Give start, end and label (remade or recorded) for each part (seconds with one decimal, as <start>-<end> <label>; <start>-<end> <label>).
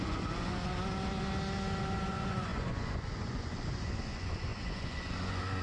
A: 0.0-0.6 remade; 0.6-2.1 recorded; 2.1-5.6 remade